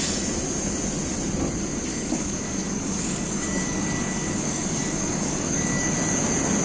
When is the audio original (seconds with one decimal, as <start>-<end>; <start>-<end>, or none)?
0.0-1.9; 5.9-6.6